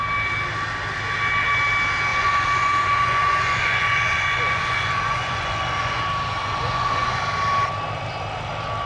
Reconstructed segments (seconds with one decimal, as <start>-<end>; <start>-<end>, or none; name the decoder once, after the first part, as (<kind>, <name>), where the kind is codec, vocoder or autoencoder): 2.1-6.0 (vocoder, Vocos); 6.4-7.2